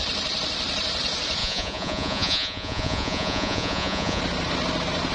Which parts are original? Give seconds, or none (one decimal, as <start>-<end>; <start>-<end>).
0.0-1.4; 4.2-5.1